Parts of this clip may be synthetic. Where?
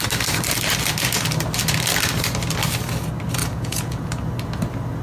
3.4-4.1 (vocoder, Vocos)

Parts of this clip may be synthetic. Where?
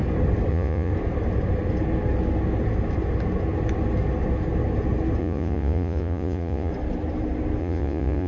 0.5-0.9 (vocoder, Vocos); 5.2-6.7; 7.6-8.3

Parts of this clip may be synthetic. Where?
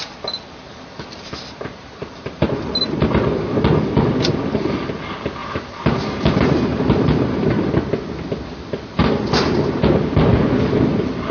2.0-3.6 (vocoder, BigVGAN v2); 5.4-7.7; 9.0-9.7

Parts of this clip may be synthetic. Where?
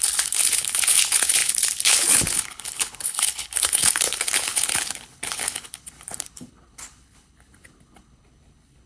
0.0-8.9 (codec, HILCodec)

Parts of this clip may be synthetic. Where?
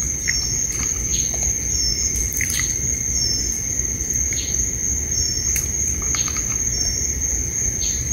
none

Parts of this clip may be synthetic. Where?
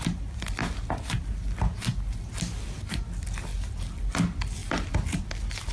none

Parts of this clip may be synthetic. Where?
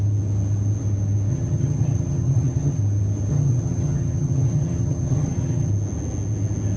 1.3-2.8 (vocoder, HiFi-GAN); 3.3-5.7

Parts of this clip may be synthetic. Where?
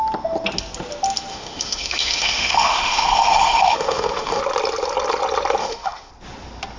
1.3-4.4 (autoencoder, DAC-VAE); 5.6-6.1